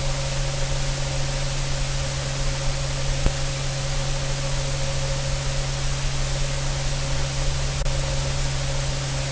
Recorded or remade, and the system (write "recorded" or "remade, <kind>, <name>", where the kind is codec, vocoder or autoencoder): recorded